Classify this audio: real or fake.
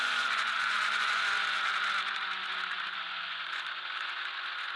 fake